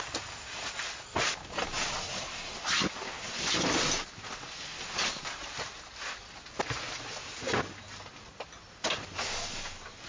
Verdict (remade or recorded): recorded